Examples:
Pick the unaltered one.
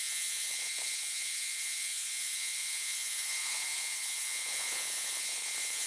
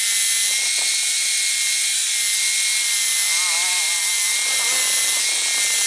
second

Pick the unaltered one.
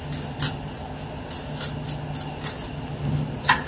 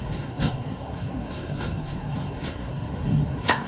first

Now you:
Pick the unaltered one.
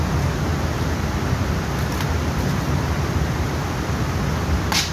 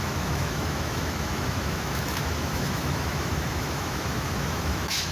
first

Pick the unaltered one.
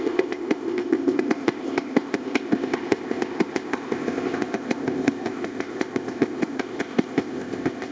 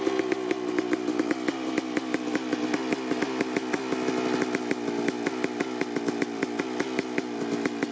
second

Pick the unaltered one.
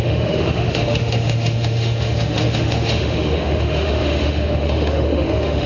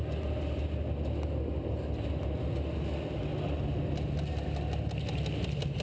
second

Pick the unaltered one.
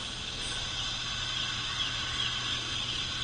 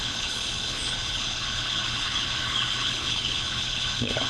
first